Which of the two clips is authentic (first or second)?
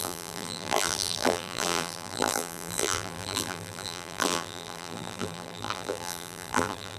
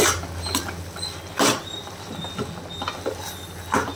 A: second